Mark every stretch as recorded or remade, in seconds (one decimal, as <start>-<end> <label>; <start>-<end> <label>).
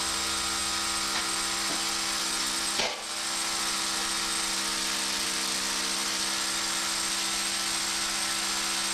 0.0-8.9 recorded